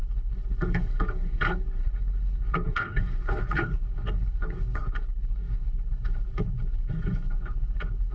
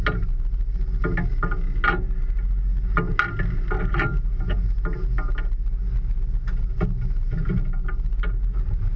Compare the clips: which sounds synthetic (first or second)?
first